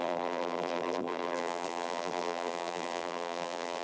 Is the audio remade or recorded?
remade